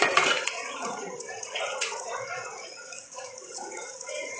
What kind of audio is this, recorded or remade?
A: remade